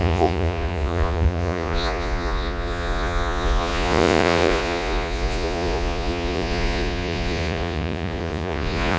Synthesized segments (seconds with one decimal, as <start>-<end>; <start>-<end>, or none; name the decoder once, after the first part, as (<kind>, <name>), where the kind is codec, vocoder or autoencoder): 0.0-9.0 (vocoder, Vocos)